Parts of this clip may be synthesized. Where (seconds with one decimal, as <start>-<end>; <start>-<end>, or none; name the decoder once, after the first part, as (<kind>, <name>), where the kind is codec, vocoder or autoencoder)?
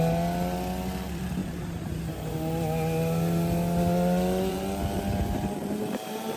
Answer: 1.4-2.0 (vocoder, BigVGAN v2); 4.5-6.4